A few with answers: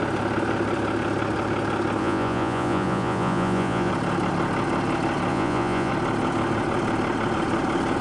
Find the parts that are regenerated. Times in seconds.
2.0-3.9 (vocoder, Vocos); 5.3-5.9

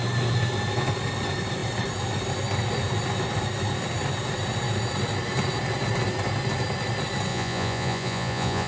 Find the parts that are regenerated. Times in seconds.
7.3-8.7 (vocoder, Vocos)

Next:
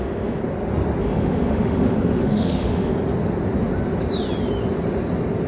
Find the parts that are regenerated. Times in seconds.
0.0-0.4 (autoencoder, DAC-VAE); 1.0-2.9

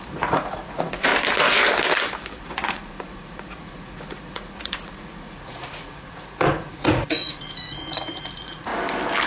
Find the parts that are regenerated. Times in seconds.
0.0-1.1 (vocoder, Vocos); 2.4-8.7

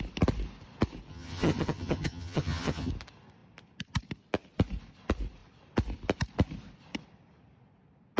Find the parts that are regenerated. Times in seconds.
1.1-2.9 (vocoder, HiFi-GAN)